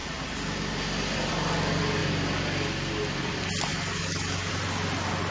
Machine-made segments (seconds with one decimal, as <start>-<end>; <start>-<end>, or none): 3.7-4.5

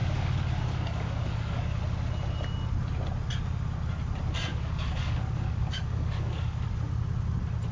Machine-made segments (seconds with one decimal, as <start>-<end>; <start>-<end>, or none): 0.0-1.8; 4.5-6.7

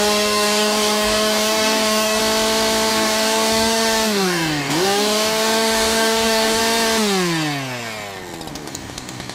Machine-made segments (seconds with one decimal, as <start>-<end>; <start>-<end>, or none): 0.0-2.2; 2.9-6.6; 8.5-9.3